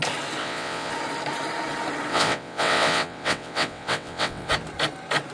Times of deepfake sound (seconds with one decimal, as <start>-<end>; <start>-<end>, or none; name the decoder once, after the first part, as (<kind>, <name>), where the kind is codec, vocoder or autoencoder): 0.4-0.9 (vocoder, WaveNeXt); 2.1-4.5